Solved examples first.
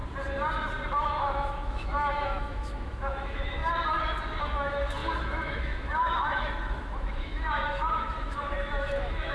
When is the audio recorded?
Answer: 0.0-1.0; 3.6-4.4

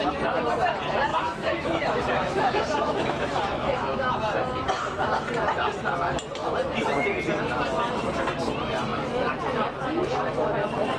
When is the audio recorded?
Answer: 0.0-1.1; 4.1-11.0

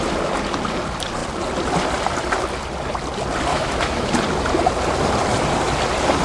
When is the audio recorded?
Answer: 0.0-3.5; 4.1-6.2